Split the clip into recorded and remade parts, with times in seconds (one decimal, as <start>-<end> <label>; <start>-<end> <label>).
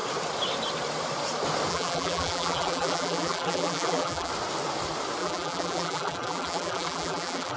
0.0-1.7 recorded; 1.7-4.3 remade; 4.3-5.2 recorded; 5.2-7.6 remade